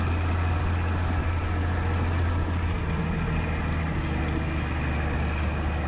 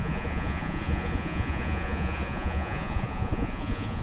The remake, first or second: second